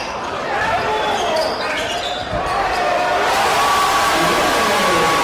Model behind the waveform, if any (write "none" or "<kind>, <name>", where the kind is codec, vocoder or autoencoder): none